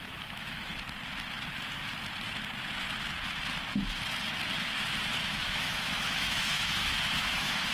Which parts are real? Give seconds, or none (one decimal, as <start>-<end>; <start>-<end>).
0.7-5.3

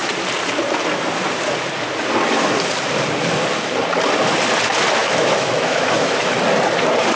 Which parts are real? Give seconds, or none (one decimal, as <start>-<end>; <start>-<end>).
0.0-5.0; 6.4-7.2

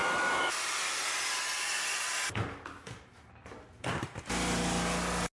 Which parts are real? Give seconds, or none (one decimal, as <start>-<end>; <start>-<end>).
0.5-5.3

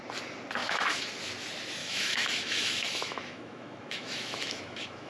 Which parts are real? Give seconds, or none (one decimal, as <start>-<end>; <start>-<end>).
0.0-0.6; 1.1-1.8

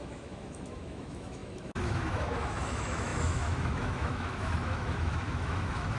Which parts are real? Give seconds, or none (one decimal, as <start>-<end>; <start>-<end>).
none

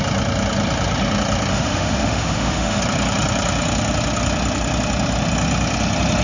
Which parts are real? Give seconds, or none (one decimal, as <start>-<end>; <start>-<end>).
0.0-1.5; 2.8-6.2

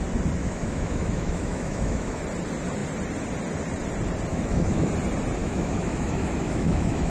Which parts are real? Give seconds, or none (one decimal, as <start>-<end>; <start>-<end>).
0.0-0.4; 2.2-4.3; 4.9-5.4

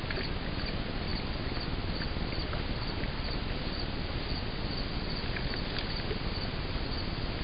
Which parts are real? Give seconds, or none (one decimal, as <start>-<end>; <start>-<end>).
0.0-7.4